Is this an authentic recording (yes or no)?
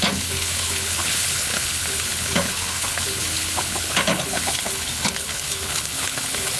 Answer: no